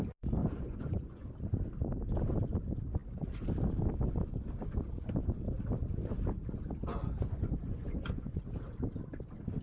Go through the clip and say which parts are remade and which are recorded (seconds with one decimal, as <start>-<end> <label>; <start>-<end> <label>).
0.0-0.4 recorded; 0.4-1.3 remade; 1.3-6.9 recorded; 6.9-8.4 remade; 8.4-9.6 recorded